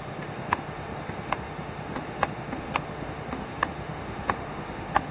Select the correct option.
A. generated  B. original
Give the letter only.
A